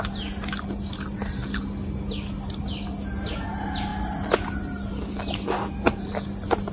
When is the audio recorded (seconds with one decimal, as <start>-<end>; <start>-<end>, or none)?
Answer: 0.0-6.7

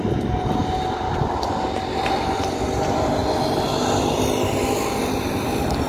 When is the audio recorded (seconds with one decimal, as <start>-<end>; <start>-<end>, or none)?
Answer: 0.0-5.9

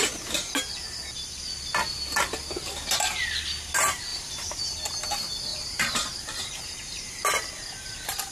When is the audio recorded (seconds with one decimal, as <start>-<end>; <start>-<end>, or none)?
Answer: 0.0-4.1; 4.6-5.5; 7.5-8.3

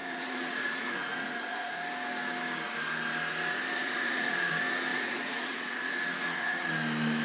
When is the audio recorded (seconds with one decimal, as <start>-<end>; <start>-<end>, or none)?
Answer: 1.8-3.8; 4.5-4.9; 6.7-7.2

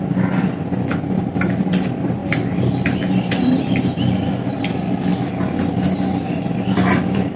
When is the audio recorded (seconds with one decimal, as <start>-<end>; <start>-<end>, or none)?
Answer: 5.1-6.1

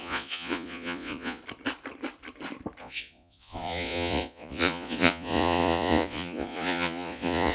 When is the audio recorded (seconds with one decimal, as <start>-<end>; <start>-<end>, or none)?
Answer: 1.4-2.8